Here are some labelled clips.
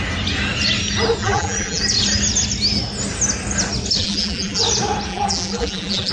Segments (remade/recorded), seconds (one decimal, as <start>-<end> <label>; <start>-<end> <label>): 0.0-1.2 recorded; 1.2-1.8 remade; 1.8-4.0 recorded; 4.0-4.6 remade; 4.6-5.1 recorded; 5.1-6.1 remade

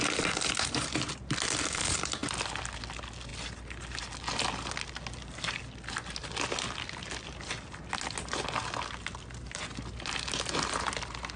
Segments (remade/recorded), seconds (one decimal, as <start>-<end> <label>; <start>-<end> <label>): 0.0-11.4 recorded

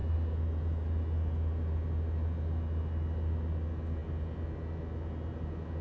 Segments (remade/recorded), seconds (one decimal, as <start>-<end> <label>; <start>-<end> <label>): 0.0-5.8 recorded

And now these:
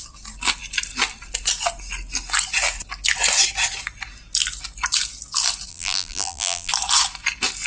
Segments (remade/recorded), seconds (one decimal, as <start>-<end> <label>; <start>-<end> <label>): 0.0-5.7 recorded; 5.7-6.7 remade; 6.7-7.7 recorded

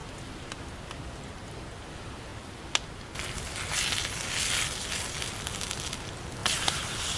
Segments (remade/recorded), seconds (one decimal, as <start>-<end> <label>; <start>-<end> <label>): 0.0-6.4 recorded; 6.4-7.2 remade

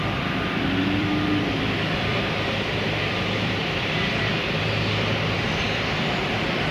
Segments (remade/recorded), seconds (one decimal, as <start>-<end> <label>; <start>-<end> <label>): 0.0-6.7 remade

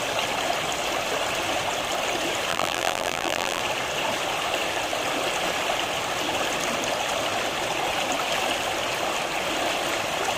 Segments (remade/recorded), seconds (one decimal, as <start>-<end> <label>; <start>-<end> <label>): 0.0-2.5 recorded; 2.5-3.6 remade; 3.6-10.4 recorded

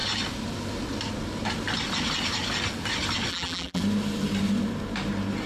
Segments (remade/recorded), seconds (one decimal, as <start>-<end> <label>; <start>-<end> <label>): 0.0-3.3 recorded; 3.3-3.8 remade; 3.8-5.5 recorded